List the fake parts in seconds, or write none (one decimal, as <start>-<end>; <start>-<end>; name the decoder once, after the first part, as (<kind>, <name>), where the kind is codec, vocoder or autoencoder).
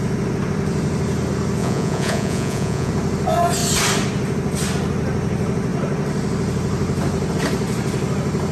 1.6-2.9 (vocoder, Vocos)